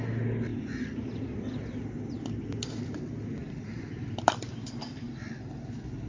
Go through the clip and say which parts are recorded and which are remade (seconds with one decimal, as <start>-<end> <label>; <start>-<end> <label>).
0.0-0.5 recorded; 0.5-3.0 remade; 3.0-3.4 recorded; 3.4-5.3 remade; 5.3-6.1 recorded